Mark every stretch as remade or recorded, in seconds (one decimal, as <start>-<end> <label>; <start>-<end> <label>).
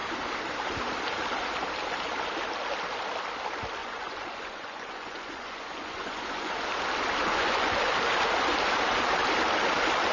0.0-3.8 recorded; 3.8-6.7 remade; 6.7-7.2 recorded; 7.2-7.9 remade; 7.9-10.1 recorded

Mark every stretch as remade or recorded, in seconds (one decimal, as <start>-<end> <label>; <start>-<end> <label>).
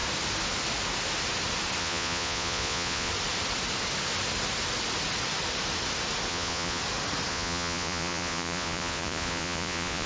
0.0-1.8 recorded; 1.8-3.1 remade; 3.1-6.3 recorded; 6.3-6.8 remade; 6.8-7.3 recorded; 7.3-10.1 remade